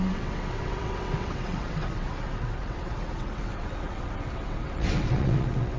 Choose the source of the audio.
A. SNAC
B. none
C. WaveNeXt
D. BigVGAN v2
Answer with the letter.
C